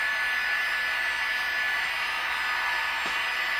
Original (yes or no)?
yes